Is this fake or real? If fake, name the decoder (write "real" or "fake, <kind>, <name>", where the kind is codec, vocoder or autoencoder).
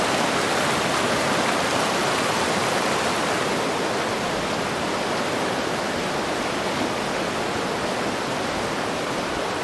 real